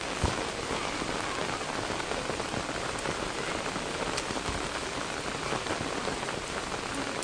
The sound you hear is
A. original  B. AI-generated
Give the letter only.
A